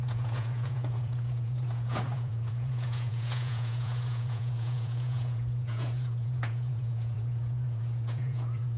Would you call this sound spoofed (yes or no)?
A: yes